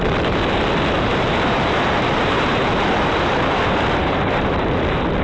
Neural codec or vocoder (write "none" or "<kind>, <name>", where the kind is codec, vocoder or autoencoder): vocoder, BigVGAN v2